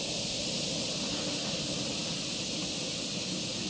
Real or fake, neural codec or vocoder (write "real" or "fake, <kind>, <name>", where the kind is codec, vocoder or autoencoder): real